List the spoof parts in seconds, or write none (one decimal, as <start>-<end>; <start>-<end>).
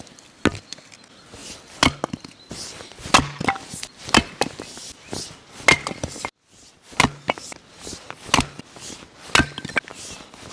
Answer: none